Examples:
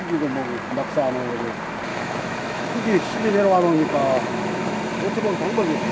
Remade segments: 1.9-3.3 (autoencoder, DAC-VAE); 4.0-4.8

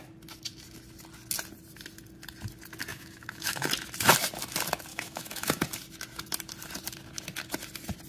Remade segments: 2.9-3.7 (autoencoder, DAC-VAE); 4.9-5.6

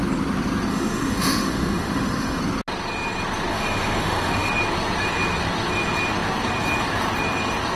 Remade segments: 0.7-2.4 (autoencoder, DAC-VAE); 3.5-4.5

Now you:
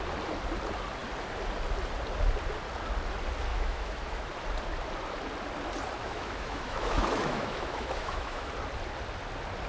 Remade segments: 3.5-4.3 (autoencoder, DAC-VAE); 6.0-8.5